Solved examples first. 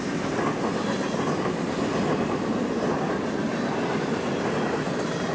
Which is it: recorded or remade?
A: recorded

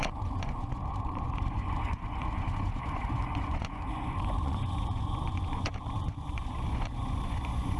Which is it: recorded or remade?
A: remade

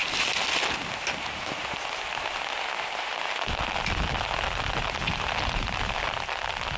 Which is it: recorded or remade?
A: recorded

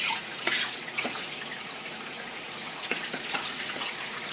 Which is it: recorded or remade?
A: remade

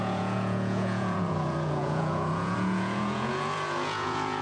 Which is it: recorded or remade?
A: remade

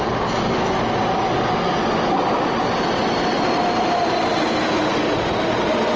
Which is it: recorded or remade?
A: recorded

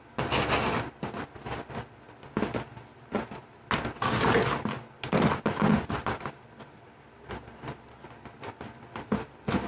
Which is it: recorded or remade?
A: recorded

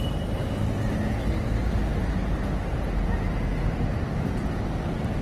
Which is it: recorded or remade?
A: recorded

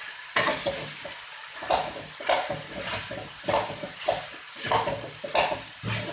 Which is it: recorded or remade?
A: recorded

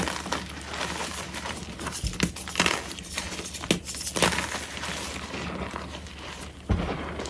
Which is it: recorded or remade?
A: recorded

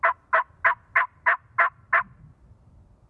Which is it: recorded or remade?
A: recorded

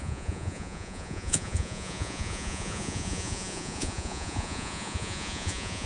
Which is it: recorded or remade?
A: remade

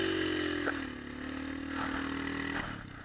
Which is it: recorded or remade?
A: recorded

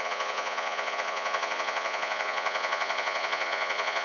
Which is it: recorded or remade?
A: remade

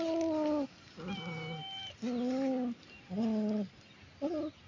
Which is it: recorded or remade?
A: recorded